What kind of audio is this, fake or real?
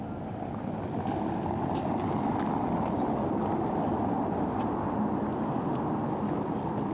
real